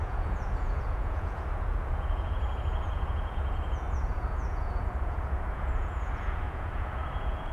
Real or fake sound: fake